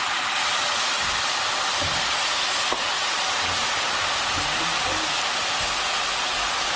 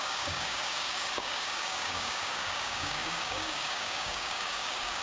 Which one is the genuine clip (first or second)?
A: first